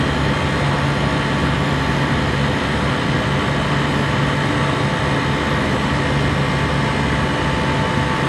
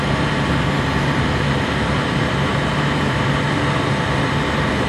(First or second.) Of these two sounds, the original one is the first